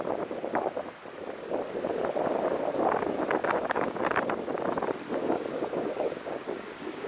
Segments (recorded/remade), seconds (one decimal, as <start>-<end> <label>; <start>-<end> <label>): 0.0-3.4 recorded; 3.4-4.0 remade; 4.0-5.2 recorded; 5.2-7.1 remade